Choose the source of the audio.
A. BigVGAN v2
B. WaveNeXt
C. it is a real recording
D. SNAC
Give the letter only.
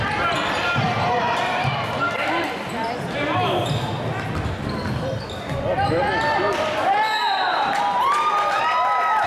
C